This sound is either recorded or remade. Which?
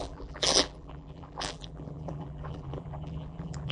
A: remade